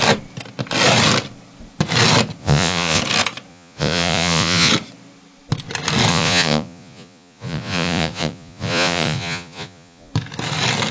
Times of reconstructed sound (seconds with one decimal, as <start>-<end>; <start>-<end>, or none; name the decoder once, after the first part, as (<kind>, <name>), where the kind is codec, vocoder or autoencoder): 2.4-3.0 (vocoder, Vocos); 3.5-4.7; 6.1-10.1